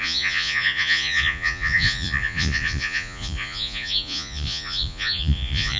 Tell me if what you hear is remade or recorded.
remade